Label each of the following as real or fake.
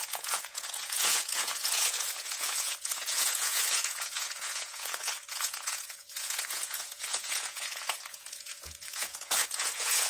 fake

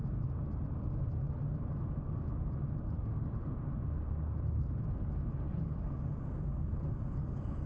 real